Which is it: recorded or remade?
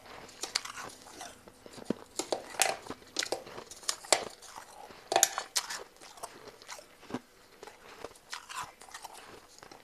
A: recorded